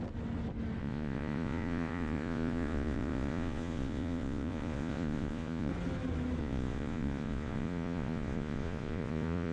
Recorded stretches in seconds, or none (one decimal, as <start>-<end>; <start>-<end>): 0.0-0.8; 5.7-6.4